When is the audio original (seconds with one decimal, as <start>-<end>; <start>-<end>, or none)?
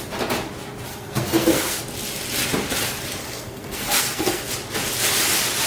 0.0-0.9; 1.8-3.2; 4.5-5.7